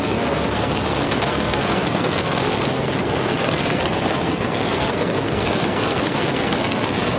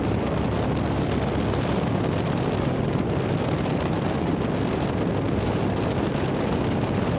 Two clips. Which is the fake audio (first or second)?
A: first